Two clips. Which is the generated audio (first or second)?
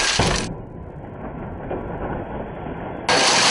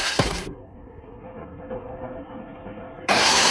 second